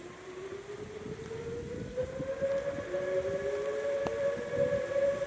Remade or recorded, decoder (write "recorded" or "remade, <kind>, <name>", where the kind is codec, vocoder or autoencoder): recorded